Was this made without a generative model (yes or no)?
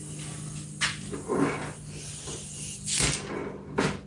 yes